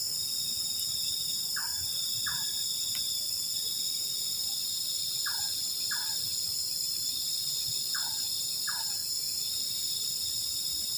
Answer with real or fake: real